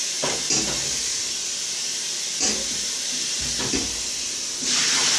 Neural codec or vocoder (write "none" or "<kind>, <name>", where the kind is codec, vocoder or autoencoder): none